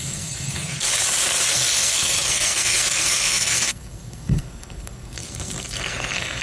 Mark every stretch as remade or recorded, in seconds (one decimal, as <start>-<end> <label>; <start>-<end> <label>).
0.0-0.9 remade; 0.9-1.5 recorded; 1.5-6.4 remade